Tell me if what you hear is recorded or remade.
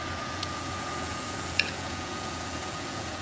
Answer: remade